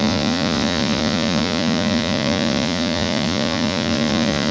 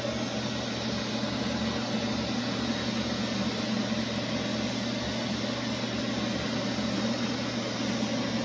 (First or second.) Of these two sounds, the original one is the second